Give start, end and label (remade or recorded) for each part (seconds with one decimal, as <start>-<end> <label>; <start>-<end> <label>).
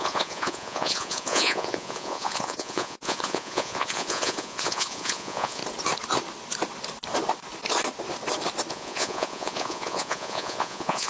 0.0-5.6 remade; 5.6-8.7 recorded; 8.7-11.1 remade